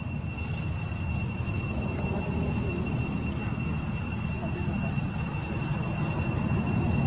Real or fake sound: real